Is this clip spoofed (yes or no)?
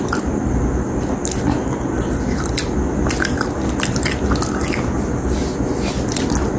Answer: no